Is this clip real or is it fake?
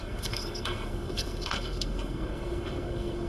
fake